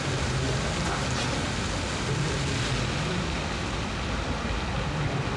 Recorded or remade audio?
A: recorded